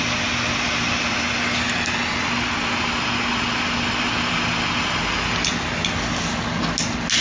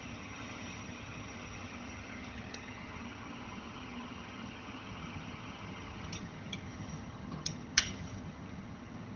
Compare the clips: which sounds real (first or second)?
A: first